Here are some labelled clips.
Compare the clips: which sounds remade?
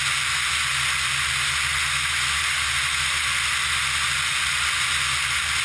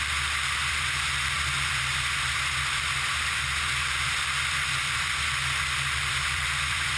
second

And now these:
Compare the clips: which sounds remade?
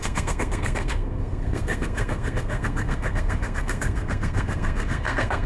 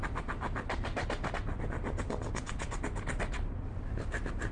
first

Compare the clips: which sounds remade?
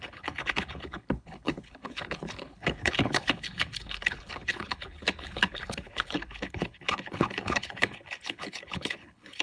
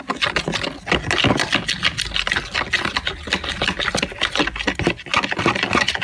first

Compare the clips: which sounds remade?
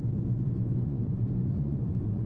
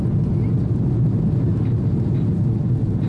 first